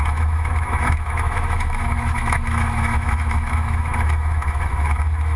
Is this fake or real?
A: fake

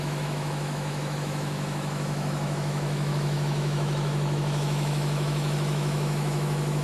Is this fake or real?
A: fake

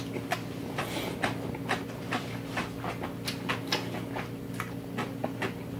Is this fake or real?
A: real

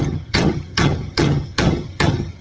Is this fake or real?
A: fake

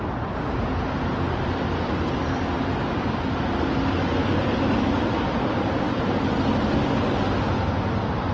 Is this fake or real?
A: real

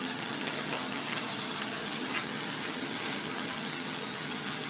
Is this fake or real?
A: fake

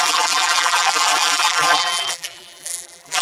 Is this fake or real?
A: fake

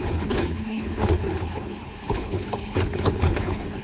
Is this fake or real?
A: fake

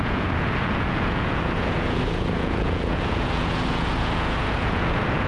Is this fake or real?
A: fake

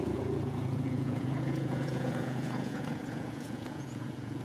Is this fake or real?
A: fake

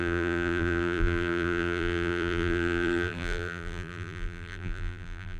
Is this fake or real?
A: fake